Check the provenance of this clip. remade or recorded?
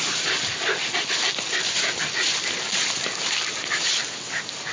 recorded